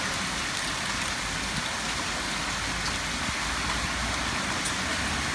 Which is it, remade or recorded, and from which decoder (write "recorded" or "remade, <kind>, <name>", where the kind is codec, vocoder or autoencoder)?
recorded